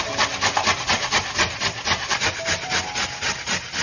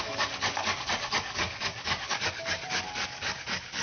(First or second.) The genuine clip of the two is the first